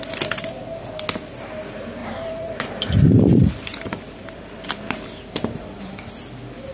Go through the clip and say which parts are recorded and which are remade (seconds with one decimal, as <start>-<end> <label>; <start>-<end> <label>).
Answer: 0.0-2.0 recorded; 2.0-6.0 remade; 6.0-6.7 recorded

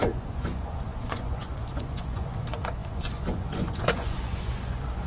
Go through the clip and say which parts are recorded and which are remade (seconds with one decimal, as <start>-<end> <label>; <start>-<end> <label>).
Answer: 0.0-5.1 remade

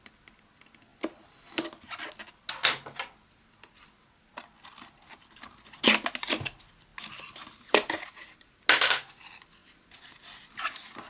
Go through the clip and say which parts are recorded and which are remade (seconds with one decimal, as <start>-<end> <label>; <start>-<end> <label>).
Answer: 0.0-11.1 recorded

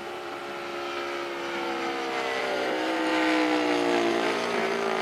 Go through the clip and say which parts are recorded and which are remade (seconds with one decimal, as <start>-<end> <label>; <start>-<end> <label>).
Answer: 0.0-0.4 remade; 0.4-2.4 recorded; 2.4-3.1 remade; 3.1-4.1 recorded; 4.1-5.0 remade